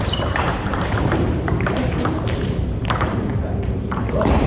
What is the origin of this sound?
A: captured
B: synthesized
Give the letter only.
B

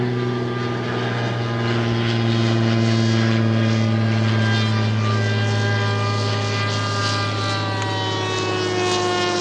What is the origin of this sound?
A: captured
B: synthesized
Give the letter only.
A